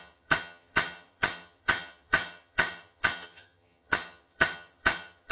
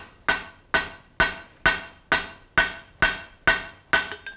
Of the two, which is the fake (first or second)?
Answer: first